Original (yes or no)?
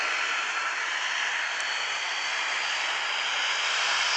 yes